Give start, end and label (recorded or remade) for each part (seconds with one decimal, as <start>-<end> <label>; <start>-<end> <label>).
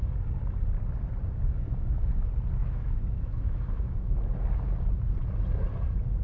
0.0-2.6 recorded; 2.6-4.2 remade; 4.2-6.2 recorded